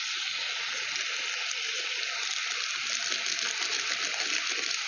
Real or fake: real